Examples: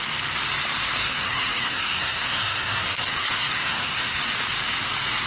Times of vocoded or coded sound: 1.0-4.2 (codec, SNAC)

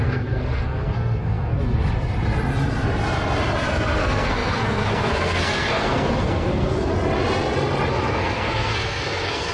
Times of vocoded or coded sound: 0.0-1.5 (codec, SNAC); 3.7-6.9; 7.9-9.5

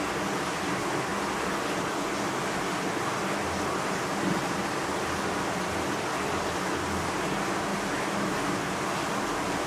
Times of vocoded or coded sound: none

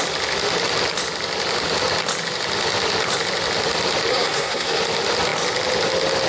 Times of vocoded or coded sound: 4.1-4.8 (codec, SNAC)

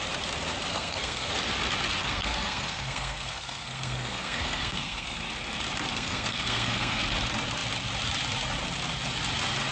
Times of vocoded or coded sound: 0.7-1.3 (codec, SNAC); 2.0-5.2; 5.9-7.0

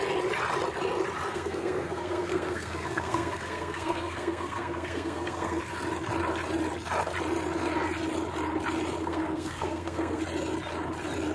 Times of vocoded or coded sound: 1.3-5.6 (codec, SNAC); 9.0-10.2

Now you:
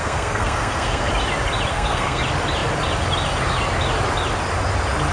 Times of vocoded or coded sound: 0.0-1.1 (codec, SNAC); 1.7-2.2